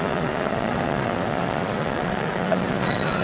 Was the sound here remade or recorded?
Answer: remade